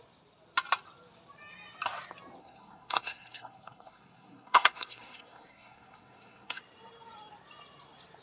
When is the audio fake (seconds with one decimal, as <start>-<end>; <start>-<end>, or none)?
2.4-6.6